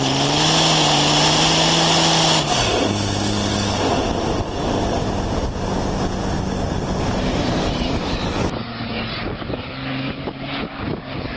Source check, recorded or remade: recorded